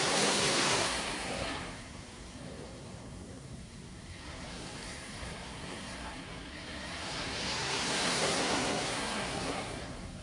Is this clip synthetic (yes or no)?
yes